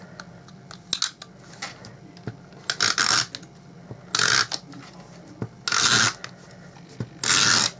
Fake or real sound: real